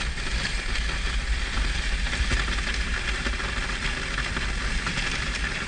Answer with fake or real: real